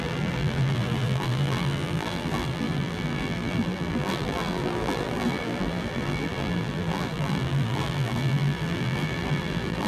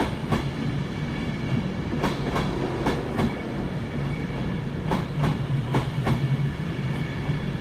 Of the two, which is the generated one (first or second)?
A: first